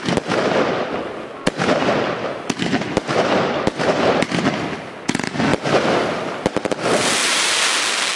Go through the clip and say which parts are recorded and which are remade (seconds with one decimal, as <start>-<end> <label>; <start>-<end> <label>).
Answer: 0.0-8.2 recorded